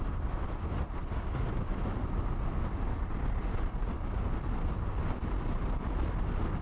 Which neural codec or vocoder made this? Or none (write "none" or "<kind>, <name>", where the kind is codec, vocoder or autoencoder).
none